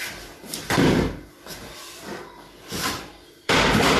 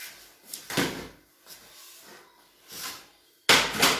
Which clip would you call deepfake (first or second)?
first